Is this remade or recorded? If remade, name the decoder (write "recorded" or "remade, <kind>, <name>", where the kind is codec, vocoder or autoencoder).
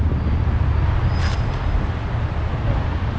recorded